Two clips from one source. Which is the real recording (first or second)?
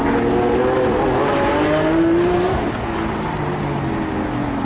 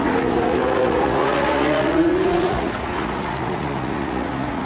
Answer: first